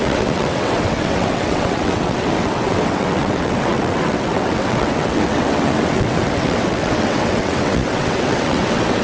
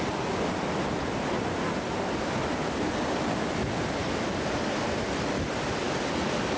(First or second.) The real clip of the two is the second